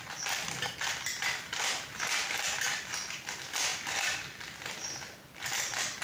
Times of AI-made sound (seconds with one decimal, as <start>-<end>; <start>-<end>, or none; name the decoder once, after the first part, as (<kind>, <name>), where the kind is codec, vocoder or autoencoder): none